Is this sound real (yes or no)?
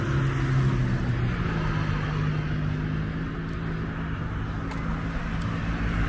yes